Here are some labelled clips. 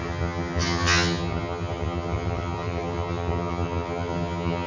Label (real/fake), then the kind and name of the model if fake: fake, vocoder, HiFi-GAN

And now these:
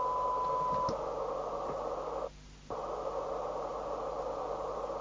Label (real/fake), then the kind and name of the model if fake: real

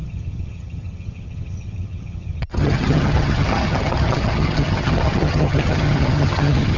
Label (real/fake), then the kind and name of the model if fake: fake, vocoder, HiFi-GAN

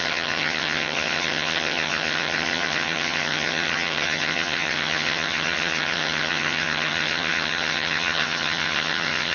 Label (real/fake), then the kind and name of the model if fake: fake, vocoder, HiFi-GAN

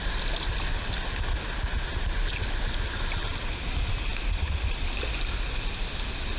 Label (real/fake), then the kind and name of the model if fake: real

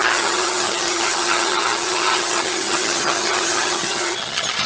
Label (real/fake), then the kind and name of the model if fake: fake, vocoder, HiFi-GAN